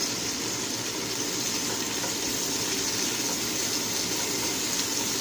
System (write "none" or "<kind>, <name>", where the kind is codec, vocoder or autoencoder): none